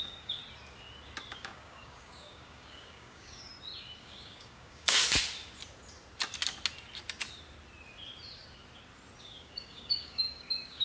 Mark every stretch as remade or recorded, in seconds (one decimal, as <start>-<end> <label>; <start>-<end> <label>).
0.0-0.4 remade; 0.4-1.3 recorded; 1.3-3.5 remade; 3.5-4.0 recorded; 4.0-5.0 remade; 5.0-9.2 recorded; 9.2-10.8 remade